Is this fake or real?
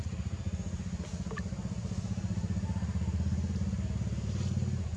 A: real